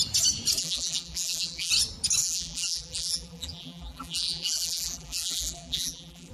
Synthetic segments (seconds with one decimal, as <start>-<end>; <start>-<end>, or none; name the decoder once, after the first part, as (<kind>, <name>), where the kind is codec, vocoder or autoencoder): 0.6-1.7 (vocoder, BigVGAN v2); 2.2-6.3

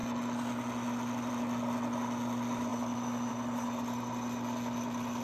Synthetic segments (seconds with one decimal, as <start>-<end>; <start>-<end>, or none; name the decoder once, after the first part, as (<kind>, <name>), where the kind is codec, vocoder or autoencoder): 2.7-3.3 (vocoder, BigVGAN v2)

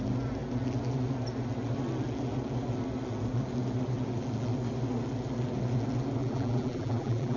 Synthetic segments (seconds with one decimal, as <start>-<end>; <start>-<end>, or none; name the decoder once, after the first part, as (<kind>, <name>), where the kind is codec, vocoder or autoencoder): 6.2-7.4 (vocoder, BigVGAN v2)

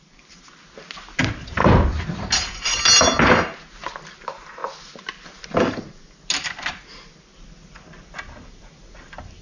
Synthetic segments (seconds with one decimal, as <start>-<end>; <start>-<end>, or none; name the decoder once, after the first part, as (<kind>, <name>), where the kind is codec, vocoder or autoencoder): none

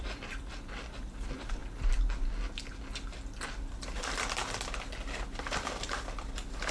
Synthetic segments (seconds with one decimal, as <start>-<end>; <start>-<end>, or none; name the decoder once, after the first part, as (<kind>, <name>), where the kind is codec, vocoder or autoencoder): 0.0-1.6 (vocoder, BigVGAN v2); 3.5-4.4; 5.4-6.7